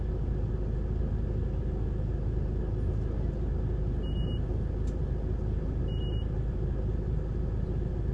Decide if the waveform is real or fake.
real